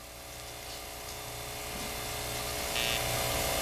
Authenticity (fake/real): real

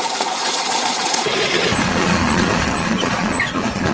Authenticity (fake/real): fake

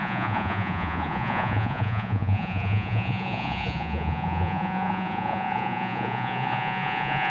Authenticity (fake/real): fake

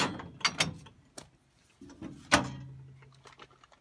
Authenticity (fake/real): real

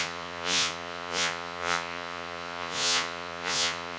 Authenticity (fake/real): fake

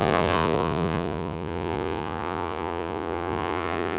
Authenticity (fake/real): fake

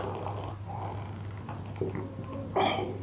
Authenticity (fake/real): real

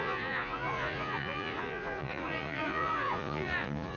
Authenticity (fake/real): fake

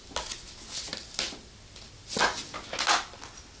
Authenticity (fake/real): real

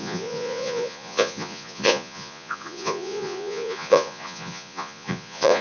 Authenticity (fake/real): fake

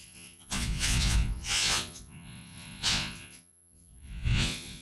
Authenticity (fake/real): fake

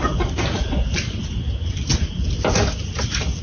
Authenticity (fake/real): real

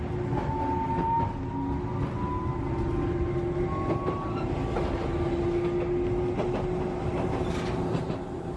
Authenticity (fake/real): real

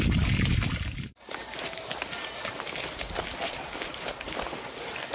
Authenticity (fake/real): real